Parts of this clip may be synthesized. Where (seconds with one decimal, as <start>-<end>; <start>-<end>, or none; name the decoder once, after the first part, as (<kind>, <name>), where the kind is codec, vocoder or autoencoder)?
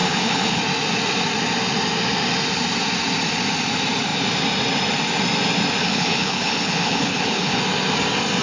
0.0-0.6 (codec, HILCodec); 5.8-7.6